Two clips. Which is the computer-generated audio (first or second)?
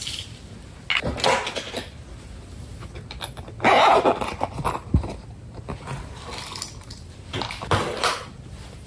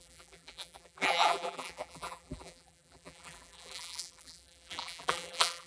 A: second